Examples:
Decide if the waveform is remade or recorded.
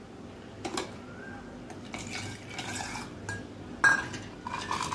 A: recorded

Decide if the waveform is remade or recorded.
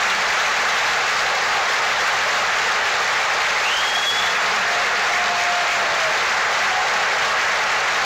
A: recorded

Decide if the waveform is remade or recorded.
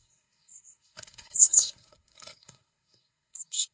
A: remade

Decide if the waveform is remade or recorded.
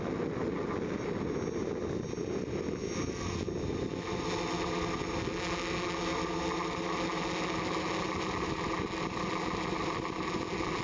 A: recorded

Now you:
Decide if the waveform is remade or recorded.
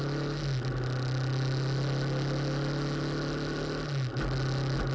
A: recorded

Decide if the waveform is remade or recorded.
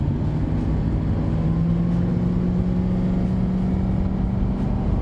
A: recorded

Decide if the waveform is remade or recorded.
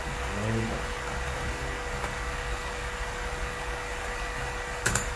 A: remade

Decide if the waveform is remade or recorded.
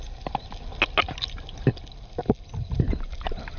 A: recorded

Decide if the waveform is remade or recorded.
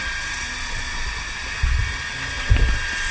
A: recorded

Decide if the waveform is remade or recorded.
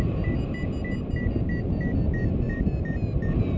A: recorded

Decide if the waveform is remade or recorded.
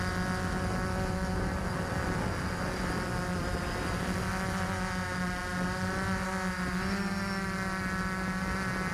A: recorded